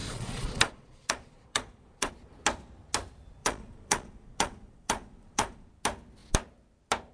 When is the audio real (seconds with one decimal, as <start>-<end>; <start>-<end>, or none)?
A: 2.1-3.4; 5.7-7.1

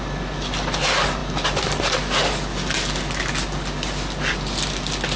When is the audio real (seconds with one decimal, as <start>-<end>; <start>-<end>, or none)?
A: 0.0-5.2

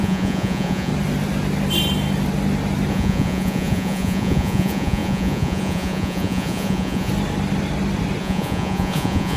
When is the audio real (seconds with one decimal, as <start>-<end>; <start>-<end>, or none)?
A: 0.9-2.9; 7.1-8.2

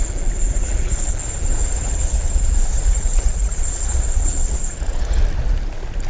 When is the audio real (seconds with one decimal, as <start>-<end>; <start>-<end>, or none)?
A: 0.0-0.6; 1.1-1.6; 5.2-6.1